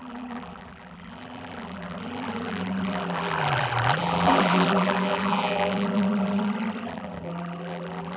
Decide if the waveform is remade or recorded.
remade